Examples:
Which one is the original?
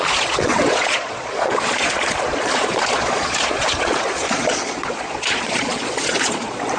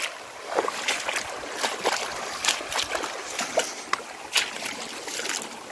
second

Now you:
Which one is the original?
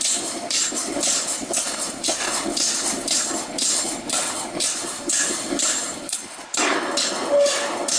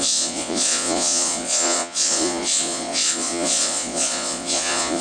first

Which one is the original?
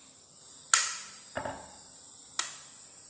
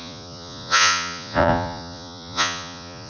first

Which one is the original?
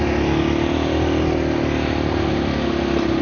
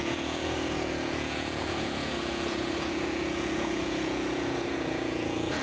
first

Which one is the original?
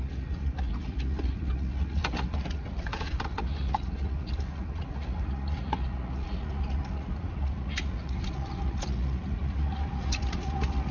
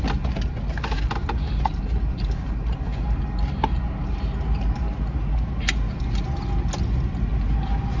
second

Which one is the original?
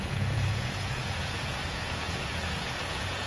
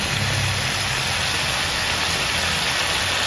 second